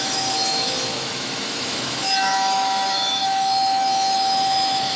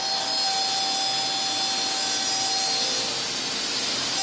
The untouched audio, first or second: second